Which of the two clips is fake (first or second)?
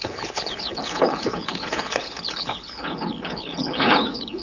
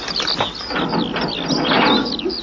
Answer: first